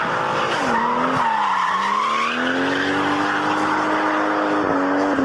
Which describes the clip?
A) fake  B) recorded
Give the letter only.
B